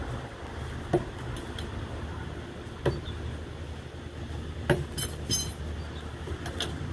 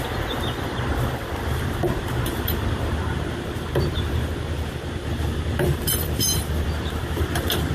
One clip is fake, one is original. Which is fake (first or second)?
second